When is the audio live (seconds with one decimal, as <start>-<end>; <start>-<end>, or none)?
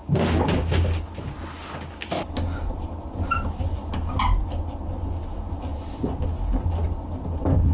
1.0-7.7